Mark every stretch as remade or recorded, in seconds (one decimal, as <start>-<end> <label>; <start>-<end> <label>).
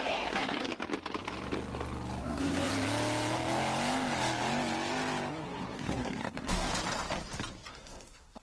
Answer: 0.0-0.7 remade; 0.7-2.2 recorded; 2.2-2.7 remade; 2.7-5.3 recorded; 5.3-6.7 remade; 6.7-7.7 recorded; 7.7-8.4 remade